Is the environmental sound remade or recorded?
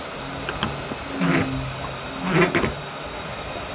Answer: recorded